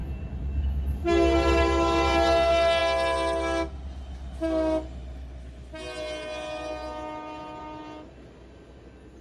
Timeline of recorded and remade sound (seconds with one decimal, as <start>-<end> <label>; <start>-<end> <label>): 0.0-9.2 recorded